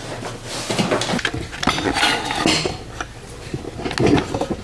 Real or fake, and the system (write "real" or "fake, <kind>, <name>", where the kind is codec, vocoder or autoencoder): real